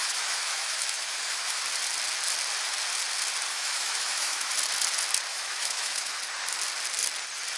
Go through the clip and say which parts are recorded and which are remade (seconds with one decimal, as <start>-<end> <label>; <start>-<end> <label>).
0.0-1.6 remade; 1.6-3.5 recorded; 3.5-4.5 remade; 4.5-5.3 recorded; 5.3-6.2 remade; 6.2-7.6 recorded